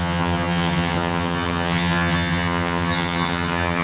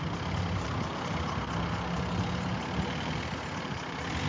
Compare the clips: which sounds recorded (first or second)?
second